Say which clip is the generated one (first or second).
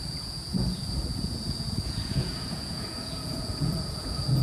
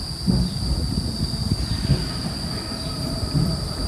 first